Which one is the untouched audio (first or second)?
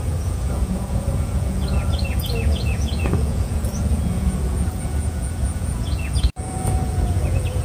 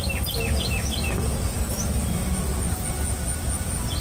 second